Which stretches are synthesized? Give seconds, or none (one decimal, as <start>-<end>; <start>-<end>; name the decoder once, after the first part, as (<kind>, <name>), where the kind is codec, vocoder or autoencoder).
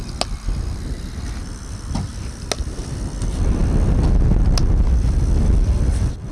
none